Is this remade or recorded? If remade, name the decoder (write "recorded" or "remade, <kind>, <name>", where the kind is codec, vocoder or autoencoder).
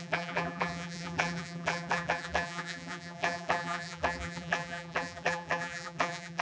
remade, vocoder, BigVGAN v2